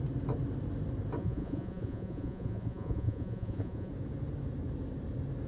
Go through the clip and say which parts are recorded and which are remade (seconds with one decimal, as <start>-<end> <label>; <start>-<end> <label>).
0.0-1.2 recorded; 1.2-3.9 remade; 3.9-5.5 recorded